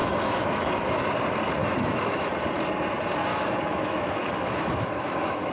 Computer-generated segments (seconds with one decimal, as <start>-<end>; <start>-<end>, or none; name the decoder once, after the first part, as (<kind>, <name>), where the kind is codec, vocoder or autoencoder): 0.0-0.6 (autoencoder, DAC-VAE); 1.6-2.3; 3.3-5.5

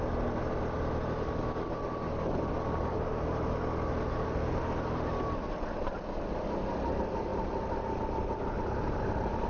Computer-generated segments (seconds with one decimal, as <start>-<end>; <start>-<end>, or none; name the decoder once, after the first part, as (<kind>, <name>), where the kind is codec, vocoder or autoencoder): none

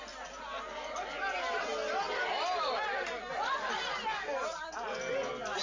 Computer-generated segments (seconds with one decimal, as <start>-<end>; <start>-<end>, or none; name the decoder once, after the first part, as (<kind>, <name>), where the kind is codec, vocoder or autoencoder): none

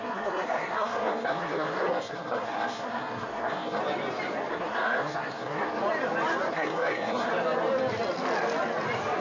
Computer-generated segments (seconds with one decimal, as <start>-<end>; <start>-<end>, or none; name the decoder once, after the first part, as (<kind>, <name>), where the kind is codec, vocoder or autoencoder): 0.0-3.8 (codec, SNAC); 4.5-5.8; 6.5-7.3

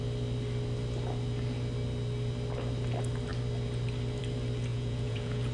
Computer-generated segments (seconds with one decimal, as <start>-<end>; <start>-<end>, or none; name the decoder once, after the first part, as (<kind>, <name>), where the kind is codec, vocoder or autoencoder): 4.7-5.5 (vocoder, Vocos)